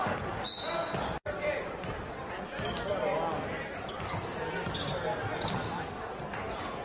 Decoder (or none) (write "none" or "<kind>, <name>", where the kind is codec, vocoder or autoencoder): none